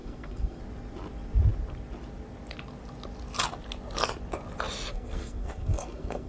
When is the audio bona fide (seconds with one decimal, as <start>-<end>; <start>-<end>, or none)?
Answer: 0.6-4.9